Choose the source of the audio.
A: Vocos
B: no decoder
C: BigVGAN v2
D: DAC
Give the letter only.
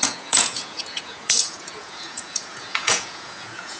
A